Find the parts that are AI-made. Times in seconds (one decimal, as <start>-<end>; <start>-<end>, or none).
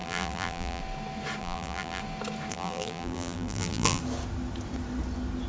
0.0-0.8; 1.4-2.0; 2.5-4.0